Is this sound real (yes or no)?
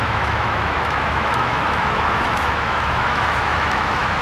no